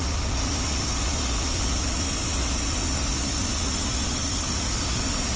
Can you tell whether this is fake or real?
real